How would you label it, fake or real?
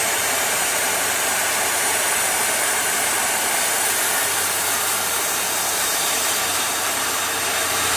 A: fake